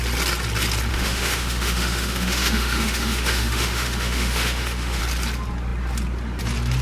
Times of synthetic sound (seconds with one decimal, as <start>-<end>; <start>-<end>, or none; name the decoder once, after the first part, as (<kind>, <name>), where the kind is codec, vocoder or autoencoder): 0.9-5.0 (autoencoder, DAC-VAE)